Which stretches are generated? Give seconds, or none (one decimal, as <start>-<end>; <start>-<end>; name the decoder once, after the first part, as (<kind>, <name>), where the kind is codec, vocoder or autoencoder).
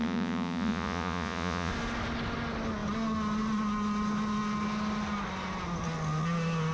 0.0-1.7 (vocoder, Vocos)